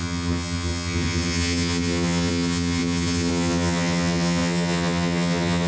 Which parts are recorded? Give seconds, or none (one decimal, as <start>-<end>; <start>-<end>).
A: none